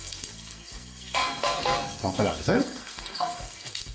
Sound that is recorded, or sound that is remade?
remade